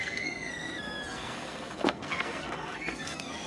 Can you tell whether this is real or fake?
fake